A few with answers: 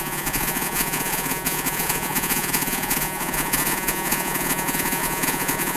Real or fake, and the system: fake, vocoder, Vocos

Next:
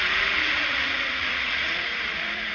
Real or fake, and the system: fake, vocoder, Vocos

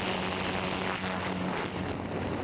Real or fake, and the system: real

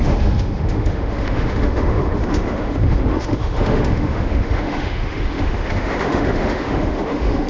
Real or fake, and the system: fake, autoencoder, DAC-VAE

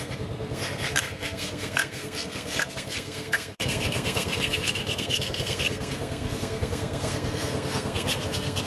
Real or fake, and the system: fake, codec, SNAC